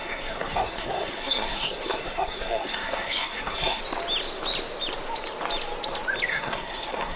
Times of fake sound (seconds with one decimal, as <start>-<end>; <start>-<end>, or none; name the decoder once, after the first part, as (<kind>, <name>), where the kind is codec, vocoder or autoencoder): 0.0-3.8 (codec, SNAC); 6.3-7.2